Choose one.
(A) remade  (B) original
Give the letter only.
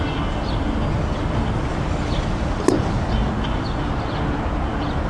B